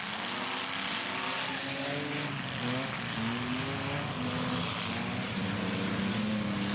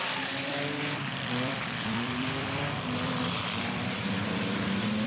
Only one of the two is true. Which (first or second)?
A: first